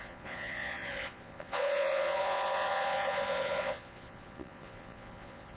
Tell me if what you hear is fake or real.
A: fake